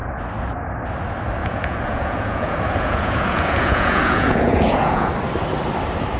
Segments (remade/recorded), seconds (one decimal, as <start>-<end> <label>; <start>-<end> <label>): 0.0-1.4 recorded; 1.4-5.1 remade; 5.1-6.2 recorded